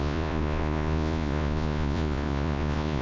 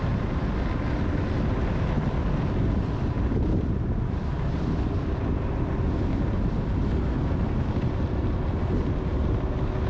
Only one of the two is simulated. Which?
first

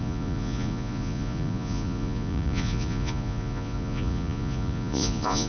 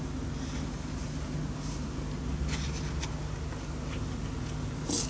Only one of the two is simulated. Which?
first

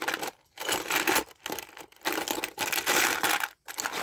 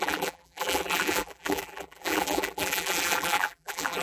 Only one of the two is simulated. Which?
second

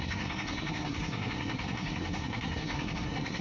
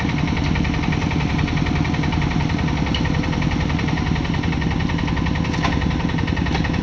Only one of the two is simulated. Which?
first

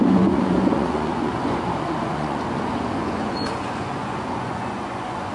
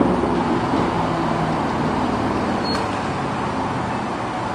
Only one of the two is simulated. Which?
first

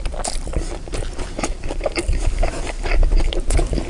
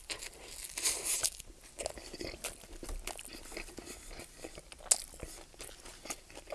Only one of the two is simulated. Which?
first